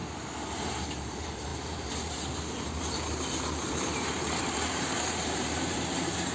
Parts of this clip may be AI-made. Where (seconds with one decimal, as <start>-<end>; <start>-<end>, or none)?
0.7-6.3